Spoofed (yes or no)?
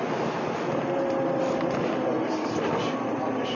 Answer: no